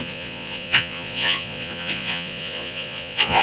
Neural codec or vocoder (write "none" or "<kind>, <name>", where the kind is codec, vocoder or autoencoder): vocoder, Vocos